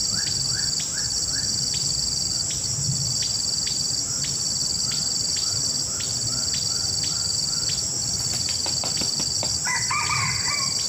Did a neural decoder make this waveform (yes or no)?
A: no